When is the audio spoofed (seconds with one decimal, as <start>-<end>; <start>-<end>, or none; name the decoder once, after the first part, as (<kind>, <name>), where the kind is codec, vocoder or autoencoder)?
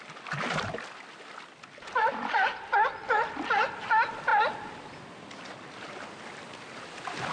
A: none